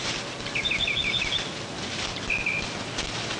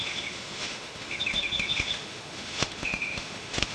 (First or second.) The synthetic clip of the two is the second